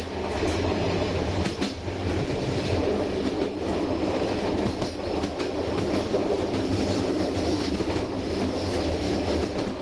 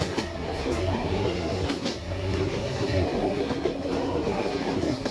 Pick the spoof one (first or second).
second